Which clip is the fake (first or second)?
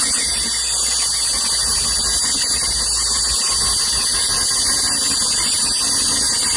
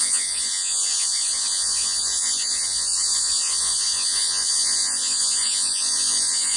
second